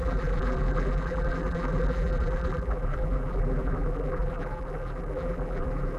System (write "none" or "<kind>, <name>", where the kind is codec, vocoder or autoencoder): vocoder, BigVGAN v2